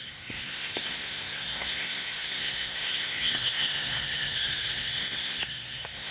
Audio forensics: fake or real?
fake